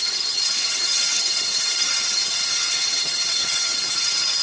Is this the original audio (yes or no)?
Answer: no